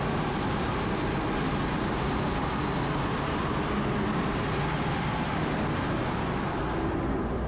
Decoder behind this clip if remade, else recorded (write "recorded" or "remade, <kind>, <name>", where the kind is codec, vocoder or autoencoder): recorded